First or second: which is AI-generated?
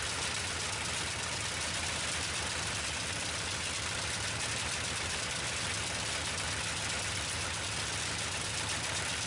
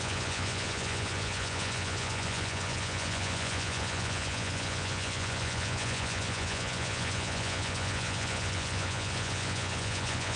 second